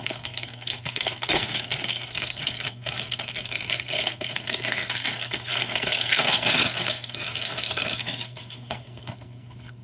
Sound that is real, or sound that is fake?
fake